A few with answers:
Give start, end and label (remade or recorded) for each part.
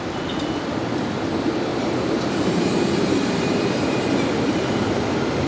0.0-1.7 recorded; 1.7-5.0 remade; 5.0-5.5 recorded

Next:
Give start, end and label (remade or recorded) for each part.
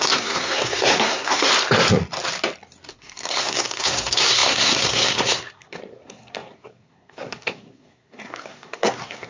0.0-1.5 remade; 1.5-2.9 recorded; 2.9-9.3 remade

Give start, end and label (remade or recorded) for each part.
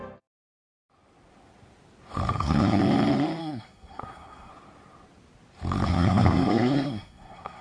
0.0-2.3 recorded; 2.3-2.8 remade; 2.8-3.4 recorded; 3.4-4.5 remade; 4.5-5.9 recorded; 5.9-7.6 remade